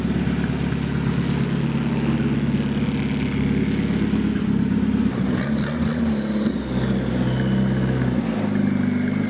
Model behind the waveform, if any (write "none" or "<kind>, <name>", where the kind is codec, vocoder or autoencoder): none